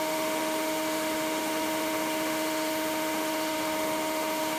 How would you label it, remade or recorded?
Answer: remade